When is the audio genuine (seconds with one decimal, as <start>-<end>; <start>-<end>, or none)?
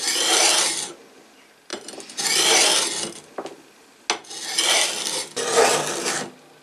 0.0-6.6